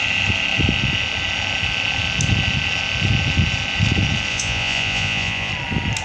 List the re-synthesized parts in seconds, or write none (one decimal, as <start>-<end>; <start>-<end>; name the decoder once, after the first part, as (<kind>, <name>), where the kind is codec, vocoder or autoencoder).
4.3-5.5 (vocoder, Vocos)

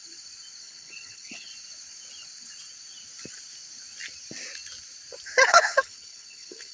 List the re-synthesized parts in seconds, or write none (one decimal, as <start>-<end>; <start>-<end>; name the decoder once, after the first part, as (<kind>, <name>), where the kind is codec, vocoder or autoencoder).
0.6-1.5 (codec, HILCodec); 5.5-6.7

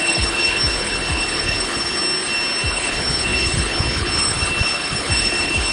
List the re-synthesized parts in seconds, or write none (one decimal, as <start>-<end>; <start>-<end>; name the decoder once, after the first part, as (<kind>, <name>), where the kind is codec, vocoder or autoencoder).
0.0-2.0 (codec, HILCodec); 2.7-5.7

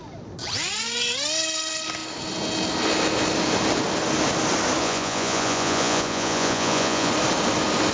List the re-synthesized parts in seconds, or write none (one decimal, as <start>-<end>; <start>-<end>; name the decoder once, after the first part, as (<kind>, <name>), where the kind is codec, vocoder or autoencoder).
4.8-7.1 (vocoder, Vocos)

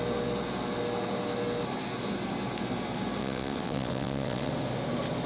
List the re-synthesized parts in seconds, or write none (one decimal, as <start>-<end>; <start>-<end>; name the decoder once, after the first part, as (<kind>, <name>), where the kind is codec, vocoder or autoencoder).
3.2-4.5 (vocoder, WaveNeXt)

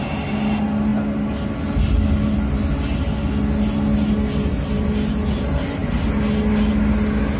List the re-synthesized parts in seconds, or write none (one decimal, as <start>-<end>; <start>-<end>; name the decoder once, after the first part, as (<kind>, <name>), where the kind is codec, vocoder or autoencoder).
none

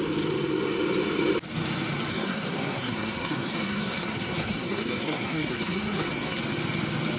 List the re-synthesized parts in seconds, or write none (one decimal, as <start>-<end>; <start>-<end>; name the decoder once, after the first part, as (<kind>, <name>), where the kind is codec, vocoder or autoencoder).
2.1-6.4 (codec, SNAC)